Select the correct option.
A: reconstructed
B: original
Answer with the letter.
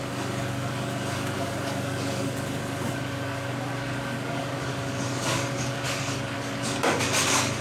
A